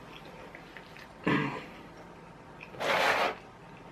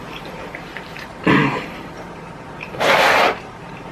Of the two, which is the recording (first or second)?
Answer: first